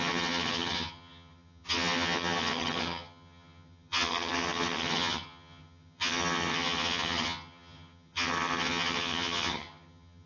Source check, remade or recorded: remade